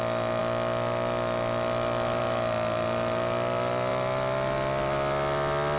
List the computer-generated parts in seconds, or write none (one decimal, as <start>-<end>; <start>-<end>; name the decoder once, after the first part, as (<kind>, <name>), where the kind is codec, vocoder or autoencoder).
none